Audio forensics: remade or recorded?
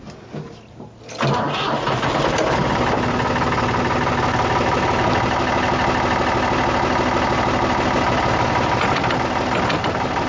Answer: recorded